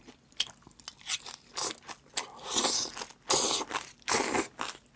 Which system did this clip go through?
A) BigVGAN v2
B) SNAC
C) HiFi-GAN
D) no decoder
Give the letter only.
D